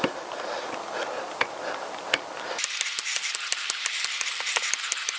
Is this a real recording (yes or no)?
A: yes